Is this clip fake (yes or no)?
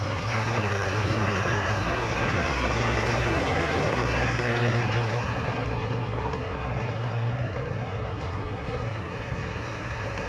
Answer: yes